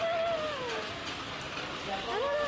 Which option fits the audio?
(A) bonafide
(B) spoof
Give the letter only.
A